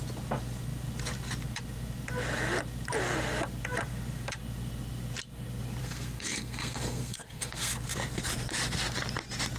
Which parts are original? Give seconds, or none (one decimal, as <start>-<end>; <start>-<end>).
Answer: 0.0-5.8; 7.7-9.6